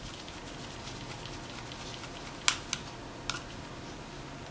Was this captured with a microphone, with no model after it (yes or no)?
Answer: yes